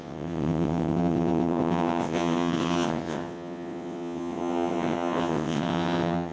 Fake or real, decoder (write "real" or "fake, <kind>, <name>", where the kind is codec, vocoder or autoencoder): fake, vocoder, WaveNeXt